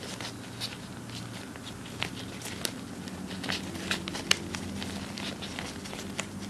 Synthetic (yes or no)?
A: no